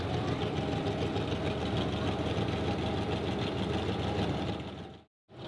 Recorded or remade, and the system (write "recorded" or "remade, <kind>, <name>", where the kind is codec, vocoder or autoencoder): recorded